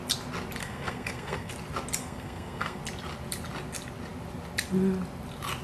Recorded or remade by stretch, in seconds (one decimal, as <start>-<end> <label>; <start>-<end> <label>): 0.0-0.6 recorded; 0.6-1.5 remade; 1.5-2.0 recorded; 2.0-2.8 remade; 2.8-5.6 recorded